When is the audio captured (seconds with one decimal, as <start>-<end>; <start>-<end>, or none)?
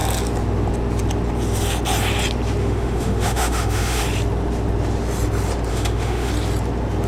0.0-2.6; 4.0-5.7; 6.3-7.1